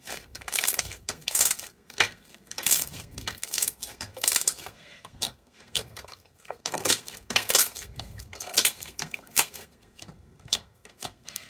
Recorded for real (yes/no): no